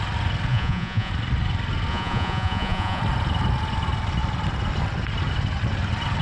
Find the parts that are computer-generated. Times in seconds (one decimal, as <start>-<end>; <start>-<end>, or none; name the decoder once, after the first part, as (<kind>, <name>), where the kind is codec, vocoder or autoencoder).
0.5-1.1 (vocoder, Vocos); 1.9-3.0